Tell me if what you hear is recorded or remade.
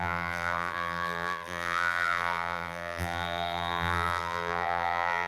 remade